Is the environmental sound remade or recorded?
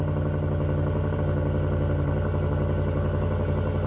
recorded